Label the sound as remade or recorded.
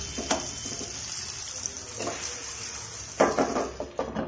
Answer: recorded